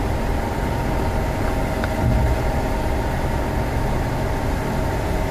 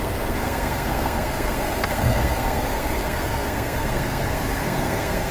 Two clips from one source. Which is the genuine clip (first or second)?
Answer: first